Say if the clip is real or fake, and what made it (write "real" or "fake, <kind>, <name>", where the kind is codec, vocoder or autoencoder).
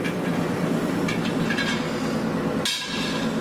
real